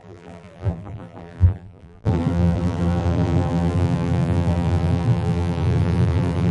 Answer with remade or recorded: remade